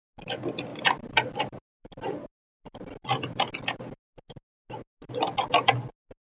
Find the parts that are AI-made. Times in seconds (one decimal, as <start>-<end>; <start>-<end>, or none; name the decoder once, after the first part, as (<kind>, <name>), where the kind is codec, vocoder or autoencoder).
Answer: 0.7-1.6 (vocoder, BigVGAN v2)